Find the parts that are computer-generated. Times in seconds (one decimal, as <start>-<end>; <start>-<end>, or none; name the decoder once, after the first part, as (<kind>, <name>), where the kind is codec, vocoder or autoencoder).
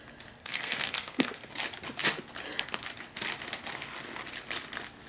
0.4-1.5 (codec, SNAC)